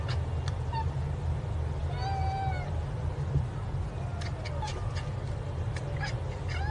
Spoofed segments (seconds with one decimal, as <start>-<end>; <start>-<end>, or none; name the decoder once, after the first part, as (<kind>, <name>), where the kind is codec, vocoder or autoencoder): none